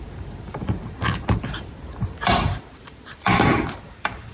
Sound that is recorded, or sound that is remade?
remade